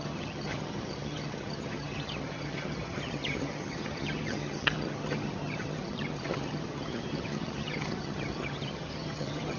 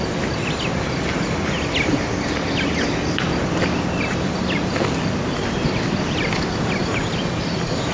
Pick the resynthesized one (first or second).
first